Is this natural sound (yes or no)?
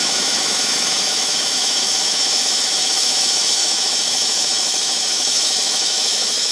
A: no